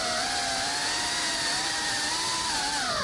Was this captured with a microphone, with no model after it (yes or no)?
no